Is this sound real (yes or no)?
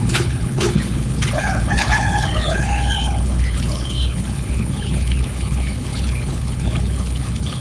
no